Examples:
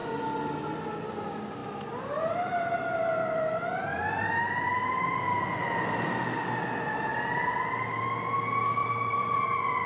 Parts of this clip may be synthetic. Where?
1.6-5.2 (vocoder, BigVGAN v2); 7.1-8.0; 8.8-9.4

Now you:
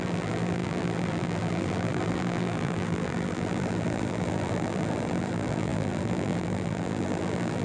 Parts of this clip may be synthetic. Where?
0.0-7.6 (vocoder, BigVGAN v2)

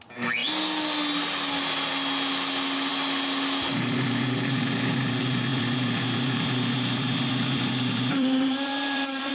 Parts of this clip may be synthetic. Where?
5.5-9.3 (vocoder, BigVGAN v2)

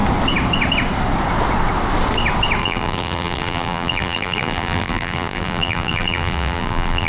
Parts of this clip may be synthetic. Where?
2.6-7.1 (vocoder, BigVGAN v2)

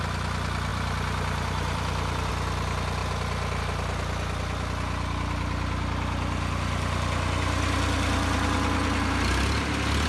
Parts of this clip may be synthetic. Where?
0.7-2.3 (vocoder, BigVGAN v2)